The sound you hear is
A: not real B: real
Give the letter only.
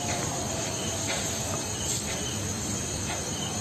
B